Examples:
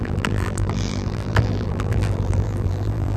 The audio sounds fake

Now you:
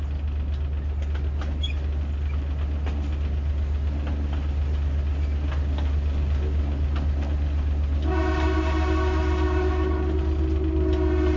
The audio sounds real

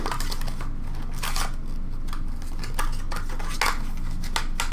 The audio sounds real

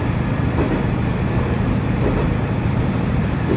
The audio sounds fake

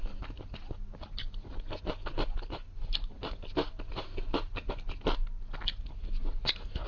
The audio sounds real